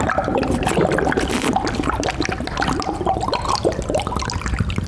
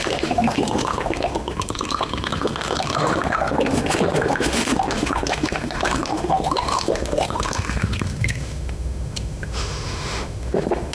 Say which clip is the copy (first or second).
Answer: second